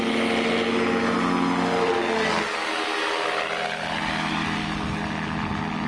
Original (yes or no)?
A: yes